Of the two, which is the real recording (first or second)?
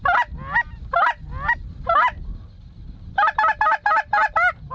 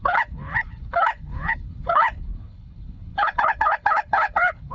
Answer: first